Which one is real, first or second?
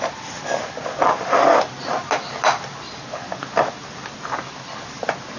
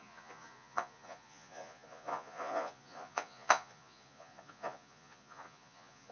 first